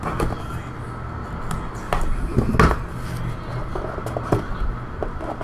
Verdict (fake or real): real